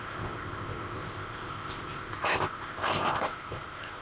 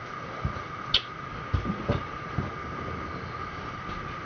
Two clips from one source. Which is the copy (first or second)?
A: first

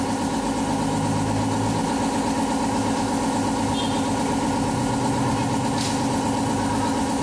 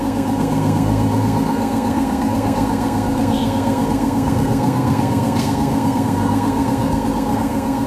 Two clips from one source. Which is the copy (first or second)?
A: second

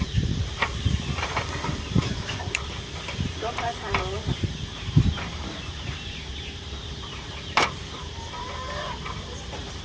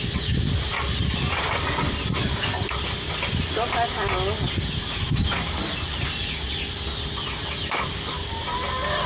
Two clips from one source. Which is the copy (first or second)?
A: first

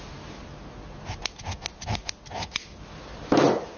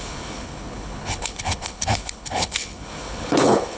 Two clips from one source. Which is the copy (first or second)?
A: second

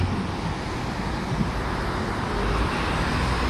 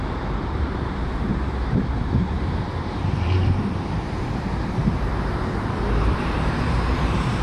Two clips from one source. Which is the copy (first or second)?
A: second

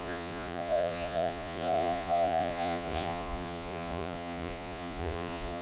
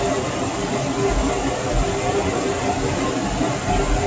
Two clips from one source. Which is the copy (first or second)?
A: first